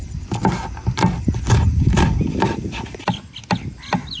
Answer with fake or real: real